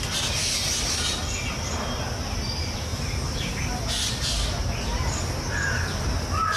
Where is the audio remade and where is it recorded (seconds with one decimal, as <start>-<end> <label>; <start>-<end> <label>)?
0.0-6.6 recorded